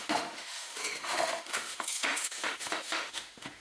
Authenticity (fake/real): fake